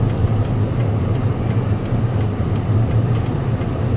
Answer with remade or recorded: recorded